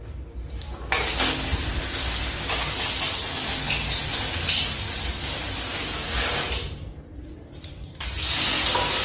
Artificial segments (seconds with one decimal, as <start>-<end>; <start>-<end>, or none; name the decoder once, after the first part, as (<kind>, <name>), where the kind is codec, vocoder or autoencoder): none